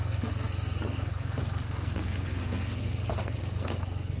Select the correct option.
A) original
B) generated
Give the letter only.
B